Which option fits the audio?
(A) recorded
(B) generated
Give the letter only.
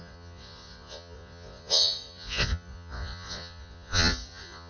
B